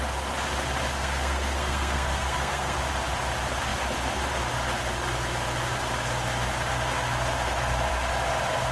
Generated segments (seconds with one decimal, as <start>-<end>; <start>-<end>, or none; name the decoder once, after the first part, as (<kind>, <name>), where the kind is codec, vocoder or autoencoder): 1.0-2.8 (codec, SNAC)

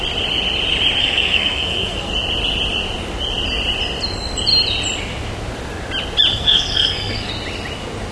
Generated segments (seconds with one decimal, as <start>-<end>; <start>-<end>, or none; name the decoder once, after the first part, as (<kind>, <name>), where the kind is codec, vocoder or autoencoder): 1.0-2.1 (codec, SNAC); 6.3-7.3

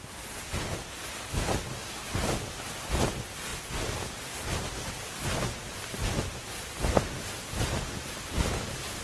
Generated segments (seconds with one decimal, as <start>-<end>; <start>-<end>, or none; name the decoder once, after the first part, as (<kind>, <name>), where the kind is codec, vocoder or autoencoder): none